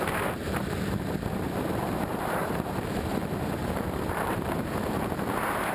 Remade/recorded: remade